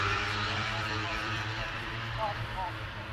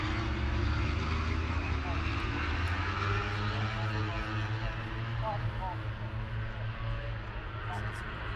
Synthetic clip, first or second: first